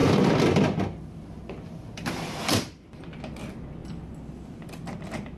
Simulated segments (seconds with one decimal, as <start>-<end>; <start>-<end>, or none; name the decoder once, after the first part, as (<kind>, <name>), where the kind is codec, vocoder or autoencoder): 0.0-3.2 (vocoder, BigVGAN v2)